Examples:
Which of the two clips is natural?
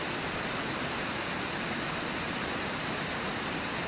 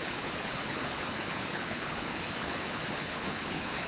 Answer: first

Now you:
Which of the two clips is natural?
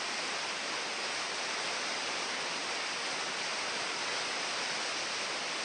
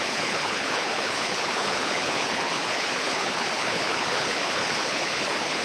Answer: first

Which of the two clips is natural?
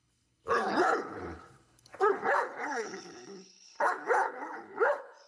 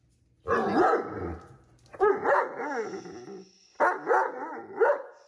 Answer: second